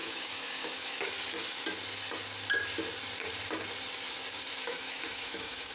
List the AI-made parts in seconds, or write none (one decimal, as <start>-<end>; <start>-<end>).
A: 0.0-1.1; 4.6-5.7